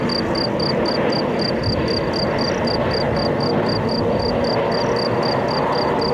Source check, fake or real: real